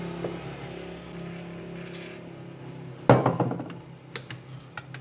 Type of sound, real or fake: real